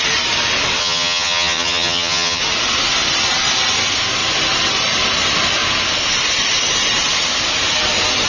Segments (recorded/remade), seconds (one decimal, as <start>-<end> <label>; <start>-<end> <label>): 0.0-0.8 recorded; 0.8-2.4 remade; 2.4-8.3 recorded